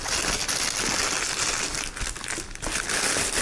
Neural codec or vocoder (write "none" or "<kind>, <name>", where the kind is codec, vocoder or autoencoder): none